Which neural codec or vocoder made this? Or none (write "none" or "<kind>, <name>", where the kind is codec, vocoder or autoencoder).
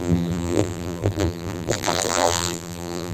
vocoder, BigVGAN v2